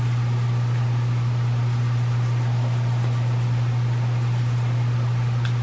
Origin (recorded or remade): recorded